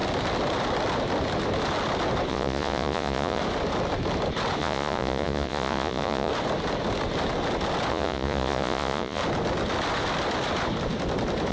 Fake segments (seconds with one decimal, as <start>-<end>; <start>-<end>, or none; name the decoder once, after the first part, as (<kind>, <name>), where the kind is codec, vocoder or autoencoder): 2.3-3.4 (vocoder, Vocos); 4.6-6.3; 7.9-9.2